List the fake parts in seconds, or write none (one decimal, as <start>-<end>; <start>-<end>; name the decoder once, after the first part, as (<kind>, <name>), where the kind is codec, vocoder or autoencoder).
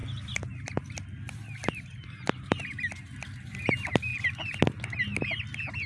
none